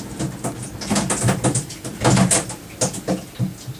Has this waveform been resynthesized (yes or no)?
no